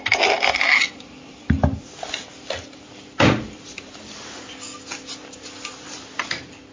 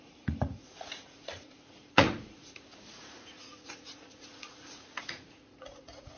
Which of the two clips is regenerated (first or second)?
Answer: second